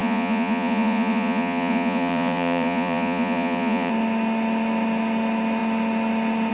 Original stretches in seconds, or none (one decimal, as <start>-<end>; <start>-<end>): 3.9-6.5